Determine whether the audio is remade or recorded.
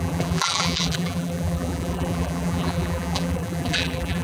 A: remade